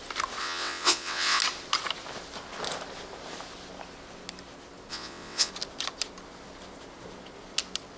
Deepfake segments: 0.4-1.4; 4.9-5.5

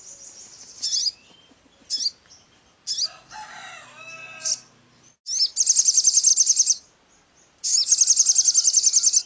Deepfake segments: none

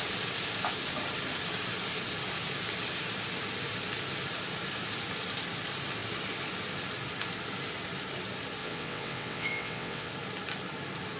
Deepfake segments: 8.6-10.1

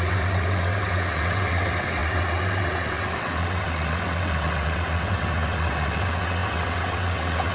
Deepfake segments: 0.0-7.5

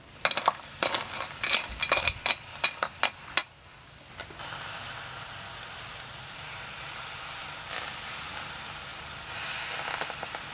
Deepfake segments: none

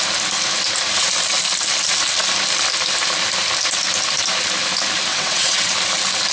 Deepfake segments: 5.1-5.7

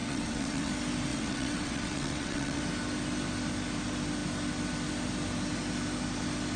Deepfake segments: 0.0-0.7; 1.1-2.6

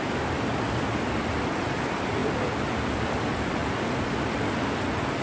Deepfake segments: none